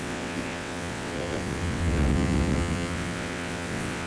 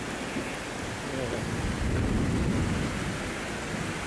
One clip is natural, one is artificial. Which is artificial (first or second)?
first